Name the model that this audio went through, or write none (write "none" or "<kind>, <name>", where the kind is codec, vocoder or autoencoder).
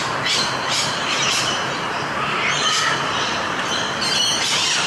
vocoder, BigVGAN v2